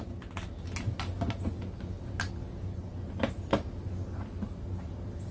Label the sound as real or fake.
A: real